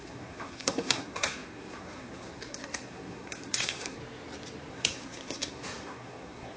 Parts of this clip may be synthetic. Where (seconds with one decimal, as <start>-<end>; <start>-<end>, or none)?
0.0-4.0; 4.7-6.6